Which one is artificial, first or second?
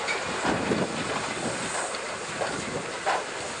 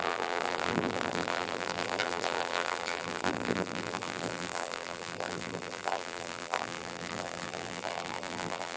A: second